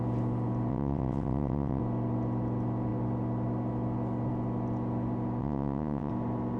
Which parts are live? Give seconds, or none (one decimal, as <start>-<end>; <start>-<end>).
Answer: 0.0-0.7; 1.8-5.4; 6.1-6.6